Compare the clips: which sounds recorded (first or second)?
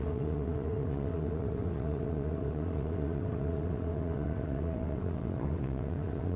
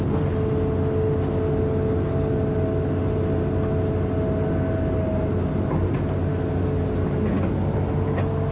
second